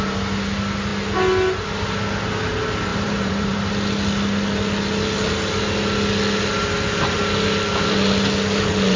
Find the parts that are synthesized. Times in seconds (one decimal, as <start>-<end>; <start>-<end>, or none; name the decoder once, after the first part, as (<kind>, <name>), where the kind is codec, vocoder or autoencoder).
2.9-3.7 (vocoder, BigVGAN v2)